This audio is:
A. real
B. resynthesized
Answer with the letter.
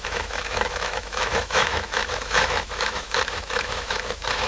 B